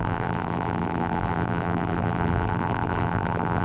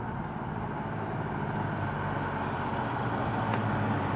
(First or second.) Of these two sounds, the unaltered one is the second